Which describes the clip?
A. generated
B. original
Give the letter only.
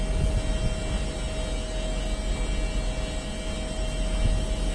B